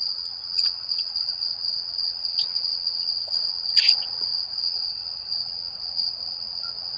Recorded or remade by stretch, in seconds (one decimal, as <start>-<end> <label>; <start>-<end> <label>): 0.0-7.0 remade